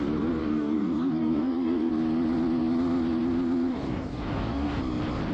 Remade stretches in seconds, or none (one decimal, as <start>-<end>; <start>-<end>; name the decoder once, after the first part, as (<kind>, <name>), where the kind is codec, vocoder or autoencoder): 0.4-1.9 (codec, DAC); 3.7-4.8